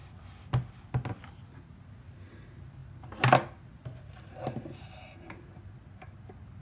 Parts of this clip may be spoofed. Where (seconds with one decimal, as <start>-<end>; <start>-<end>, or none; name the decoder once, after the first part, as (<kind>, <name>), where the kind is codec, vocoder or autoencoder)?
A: none